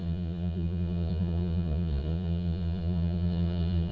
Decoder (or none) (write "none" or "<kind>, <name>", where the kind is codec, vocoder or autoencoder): vocoder, Vocos